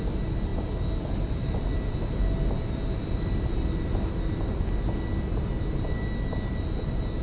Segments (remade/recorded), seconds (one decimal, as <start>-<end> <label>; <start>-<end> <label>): 0.0-7.2 recorded